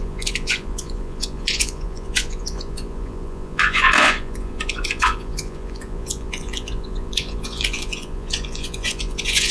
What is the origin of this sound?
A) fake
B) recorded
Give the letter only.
A